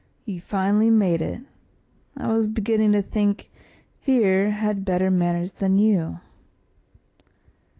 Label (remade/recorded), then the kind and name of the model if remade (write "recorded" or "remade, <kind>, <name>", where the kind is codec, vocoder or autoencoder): recorded